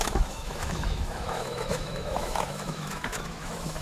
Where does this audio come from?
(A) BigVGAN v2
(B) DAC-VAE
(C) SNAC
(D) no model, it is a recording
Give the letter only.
B